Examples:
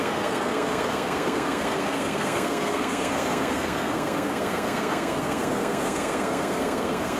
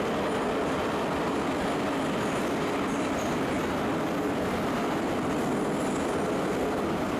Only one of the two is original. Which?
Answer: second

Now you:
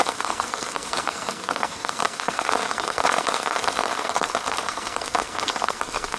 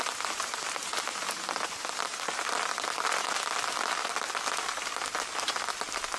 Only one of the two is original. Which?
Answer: second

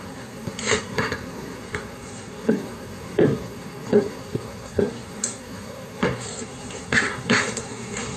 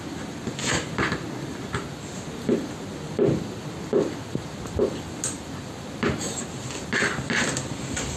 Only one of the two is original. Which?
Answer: second